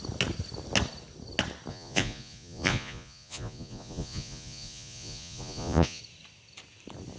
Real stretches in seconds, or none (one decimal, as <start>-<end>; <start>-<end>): 0.0-1.7; 6.0-7.2